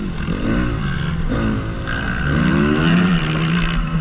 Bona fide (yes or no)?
yes